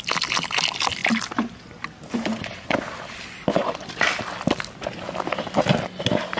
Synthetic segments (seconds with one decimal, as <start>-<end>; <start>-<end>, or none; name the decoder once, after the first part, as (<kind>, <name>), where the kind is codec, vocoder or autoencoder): none